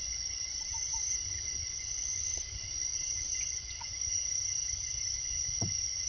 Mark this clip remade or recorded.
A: remade